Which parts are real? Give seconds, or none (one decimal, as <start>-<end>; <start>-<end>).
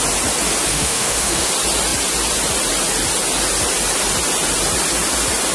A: 0.0-0.7; 1.5-5.5